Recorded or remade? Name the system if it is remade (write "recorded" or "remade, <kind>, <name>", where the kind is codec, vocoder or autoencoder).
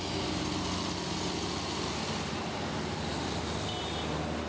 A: recorded